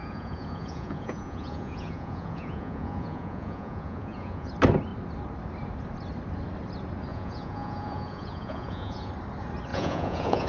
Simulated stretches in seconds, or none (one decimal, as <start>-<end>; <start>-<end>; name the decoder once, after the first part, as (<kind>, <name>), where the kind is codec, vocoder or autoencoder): 0.0-4.5 (vocoder, Vocos); 7.1-9.1; 9.7-10.5

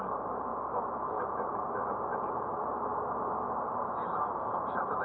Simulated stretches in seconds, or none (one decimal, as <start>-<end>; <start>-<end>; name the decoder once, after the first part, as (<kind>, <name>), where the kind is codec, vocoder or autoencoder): 0.0-0.5 (vocoder, BigVGAN v2); 1.2-2.9; 4.4-5.0

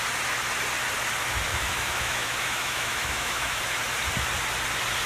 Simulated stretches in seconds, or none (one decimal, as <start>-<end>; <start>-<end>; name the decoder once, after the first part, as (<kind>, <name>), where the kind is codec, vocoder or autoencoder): 1.5-3.6 (autoencoder, DAC-VAE)

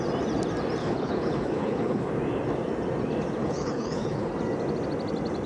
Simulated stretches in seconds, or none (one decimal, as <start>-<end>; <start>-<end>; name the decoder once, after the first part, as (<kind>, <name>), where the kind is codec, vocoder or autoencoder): 0.8-2.1 (codec, HILCodec); 3.4-4.3

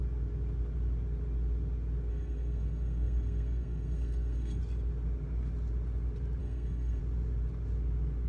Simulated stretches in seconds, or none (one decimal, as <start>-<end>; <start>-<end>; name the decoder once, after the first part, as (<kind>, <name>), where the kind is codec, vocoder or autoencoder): 2.1-4.6 (codec, SNAC); 6.4-7.0